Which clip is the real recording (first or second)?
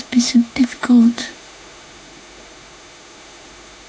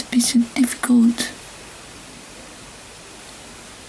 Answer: second